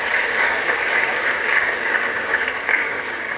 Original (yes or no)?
no